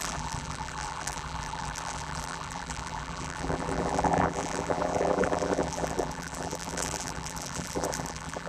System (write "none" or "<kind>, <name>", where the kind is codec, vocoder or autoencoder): vocoder, BigVGAN v2